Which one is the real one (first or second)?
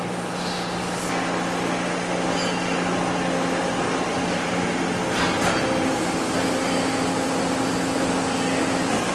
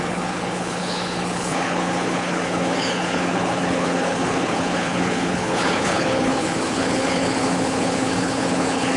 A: first